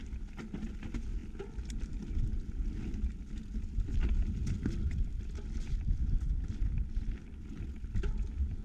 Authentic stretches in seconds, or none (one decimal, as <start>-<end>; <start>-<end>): 0.0-8.6